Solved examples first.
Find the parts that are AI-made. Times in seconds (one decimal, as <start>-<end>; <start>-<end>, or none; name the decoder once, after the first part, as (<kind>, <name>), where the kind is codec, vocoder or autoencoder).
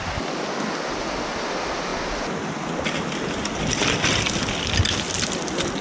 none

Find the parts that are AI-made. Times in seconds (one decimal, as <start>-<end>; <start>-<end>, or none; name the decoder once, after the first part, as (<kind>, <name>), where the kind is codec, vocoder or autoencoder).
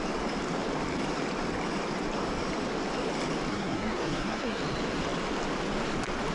3.5-4.6 (codec, SNAC)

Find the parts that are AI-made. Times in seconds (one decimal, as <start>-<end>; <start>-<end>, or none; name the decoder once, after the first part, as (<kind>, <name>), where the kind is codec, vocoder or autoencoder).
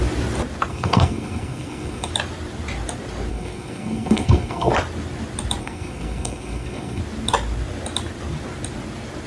0.7-2.1 (codec, SNAC); 3.3-4.7; 5.6-7.0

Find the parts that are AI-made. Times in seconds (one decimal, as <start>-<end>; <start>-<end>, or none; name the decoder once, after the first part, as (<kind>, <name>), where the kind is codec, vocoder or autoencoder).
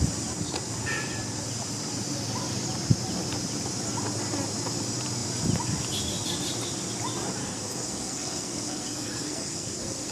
7.4-10.1 (codec, SNAC)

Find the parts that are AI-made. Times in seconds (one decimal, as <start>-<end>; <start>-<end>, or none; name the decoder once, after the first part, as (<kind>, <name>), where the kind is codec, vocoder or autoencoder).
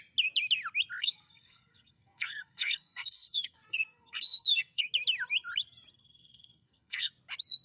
1.0-4.9 (codec, SNAC); 5.9-7.1